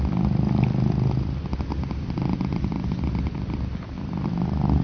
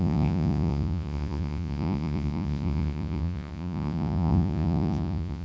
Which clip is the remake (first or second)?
second